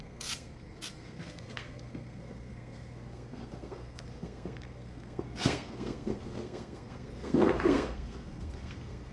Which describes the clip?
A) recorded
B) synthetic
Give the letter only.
B